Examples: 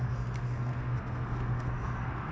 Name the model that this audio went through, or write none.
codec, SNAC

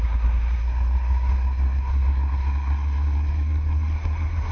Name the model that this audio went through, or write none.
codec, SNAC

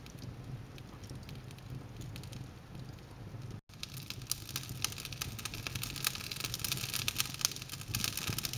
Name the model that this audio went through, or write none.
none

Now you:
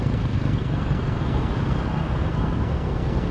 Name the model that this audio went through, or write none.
codec, SNAC